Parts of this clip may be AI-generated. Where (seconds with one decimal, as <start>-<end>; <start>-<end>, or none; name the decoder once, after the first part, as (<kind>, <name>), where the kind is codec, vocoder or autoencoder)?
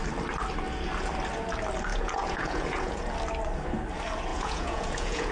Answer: 1.9-3.1 (vocoder, Vocos); 4.3-5.3